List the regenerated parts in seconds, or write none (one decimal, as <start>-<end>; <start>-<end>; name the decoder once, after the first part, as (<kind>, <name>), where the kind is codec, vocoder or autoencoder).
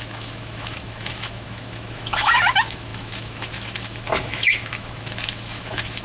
0.0-6.0 (autoencoder, DAC-VAE)